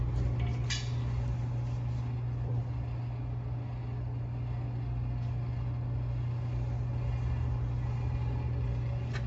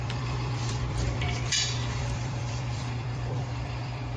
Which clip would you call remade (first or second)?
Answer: second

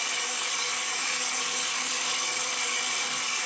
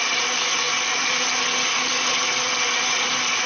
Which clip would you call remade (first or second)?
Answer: first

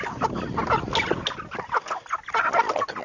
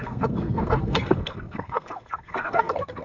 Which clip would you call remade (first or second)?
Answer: second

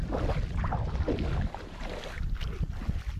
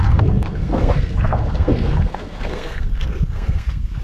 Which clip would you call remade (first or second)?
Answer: second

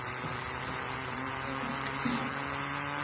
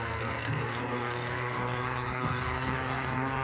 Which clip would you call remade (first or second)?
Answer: second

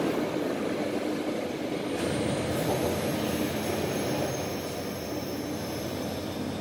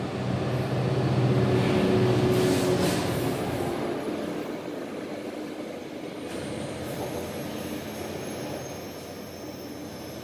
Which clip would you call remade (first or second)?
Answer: first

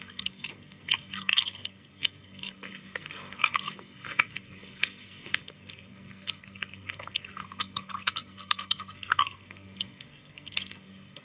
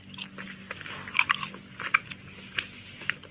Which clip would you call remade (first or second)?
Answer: first